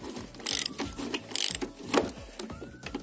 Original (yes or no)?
yes